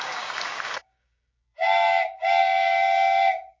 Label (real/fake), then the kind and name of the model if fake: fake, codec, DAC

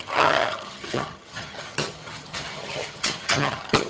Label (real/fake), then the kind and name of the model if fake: fake, vocoder, HiFi-GAN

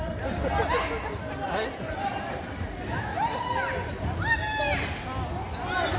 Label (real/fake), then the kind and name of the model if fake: real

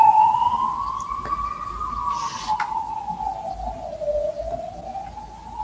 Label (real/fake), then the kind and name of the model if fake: real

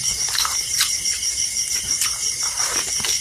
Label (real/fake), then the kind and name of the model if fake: real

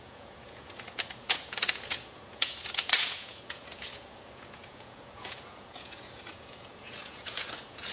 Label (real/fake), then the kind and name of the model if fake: fake, vocoder, Vocos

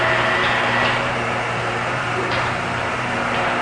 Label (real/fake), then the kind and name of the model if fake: fake, vocoder, BigVGAN v2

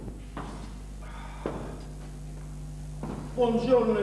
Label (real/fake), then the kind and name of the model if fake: real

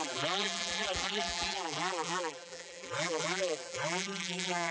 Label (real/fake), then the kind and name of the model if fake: fake, vocoder, BigVGAN v2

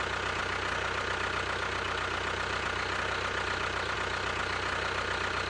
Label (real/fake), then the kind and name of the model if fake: real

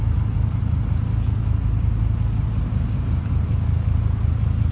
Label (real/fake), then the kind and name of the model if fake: real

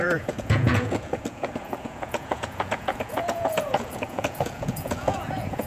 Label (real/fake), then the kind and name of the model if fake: fake, vocoder, Vocos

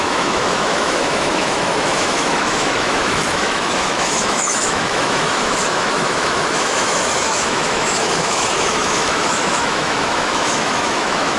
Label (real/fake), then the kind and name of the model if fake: fake, autoencoder, DAC-VAE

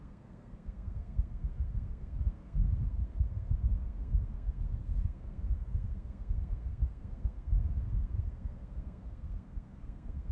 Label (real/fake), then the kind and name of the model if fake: fake, codec, SNAC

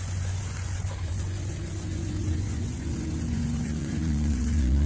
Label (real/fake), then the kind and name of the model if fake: fake, vocoder, Vocos